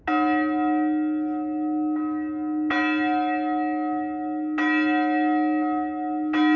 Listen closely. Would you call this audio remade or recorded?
recorded